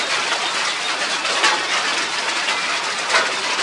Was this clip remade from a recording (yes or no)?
no